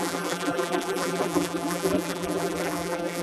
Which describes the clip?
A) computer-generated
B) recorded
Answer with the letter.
A